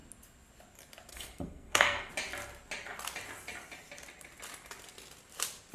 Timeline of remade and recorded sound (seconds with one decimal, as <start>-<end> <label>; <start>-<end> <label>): 0.0-1.1 recorded; 1.1-2.1 remade; 2.1-5.7 recorded